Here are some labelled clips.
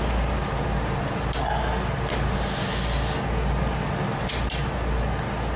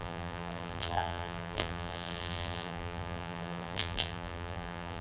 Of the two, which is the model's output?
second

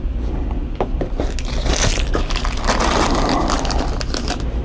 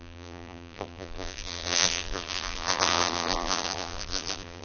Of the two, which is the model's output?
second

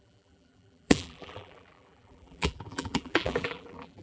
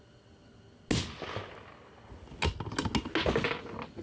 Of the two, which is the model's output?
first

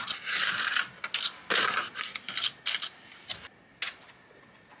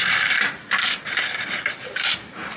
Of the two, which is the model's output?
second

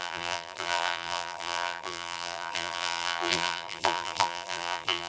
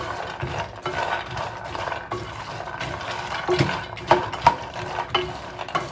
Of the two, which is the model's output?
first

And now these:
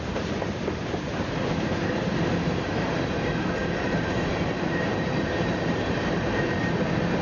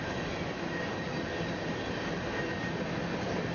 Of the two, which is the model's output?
first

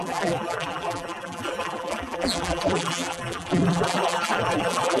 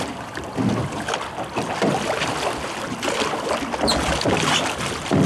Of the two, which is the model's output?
first